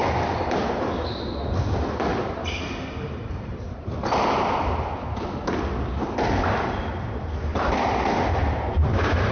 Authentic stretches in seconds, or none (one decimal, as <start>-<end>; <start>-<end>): 0.6-2.1; 4.1-7.5

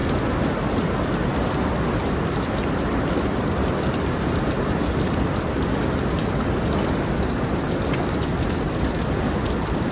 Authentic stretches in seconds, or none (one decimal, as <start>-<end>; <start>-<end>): 0.0-0.8